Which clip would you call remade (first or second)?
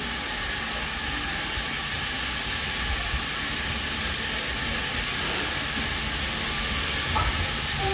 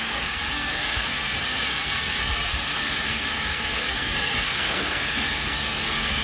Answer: second